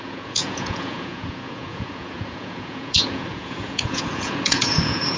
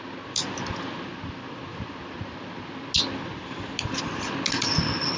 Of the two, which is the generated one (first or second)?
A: first